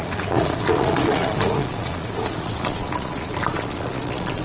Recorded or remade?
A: remade